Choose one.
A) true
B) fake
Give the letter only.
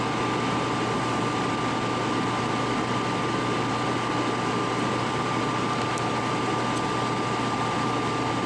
A